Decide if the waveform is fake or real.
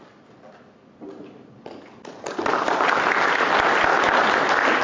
real